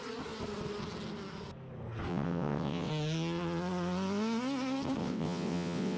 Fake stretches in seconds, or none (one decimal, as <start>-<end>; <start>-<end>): 2.1-2.9; 5.0-6.0